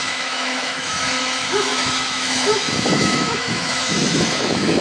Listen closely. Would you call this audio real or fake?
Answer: fake